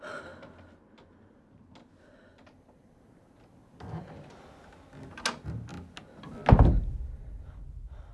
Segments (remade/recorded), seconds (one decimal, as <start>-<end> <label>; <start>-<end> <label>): 0.0-8.1 recorded